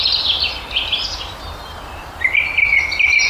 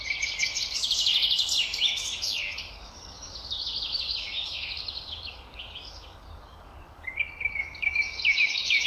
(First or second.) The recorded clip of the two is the first